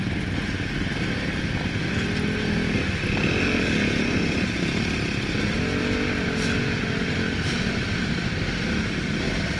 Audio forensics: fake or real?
real